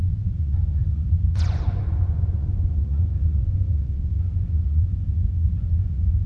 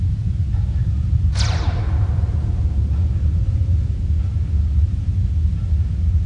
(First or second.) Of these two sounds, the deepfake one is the first